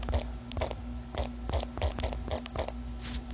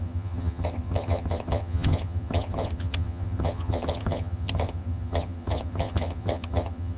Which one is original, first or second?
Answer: first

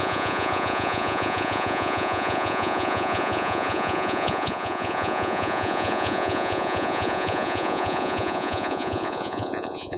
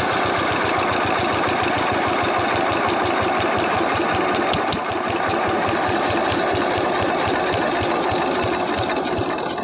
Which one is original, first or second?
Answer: second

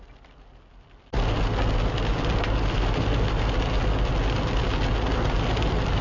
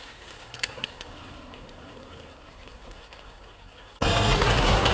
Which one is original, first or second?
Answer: first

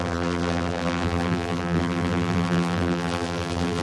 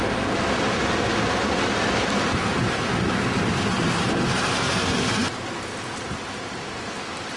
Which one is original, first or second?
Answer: second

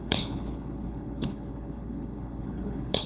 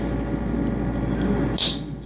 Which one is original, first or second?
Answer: second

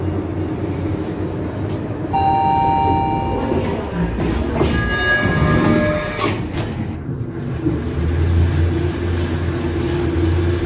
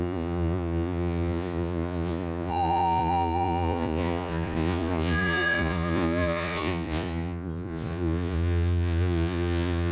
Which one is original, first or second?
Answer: first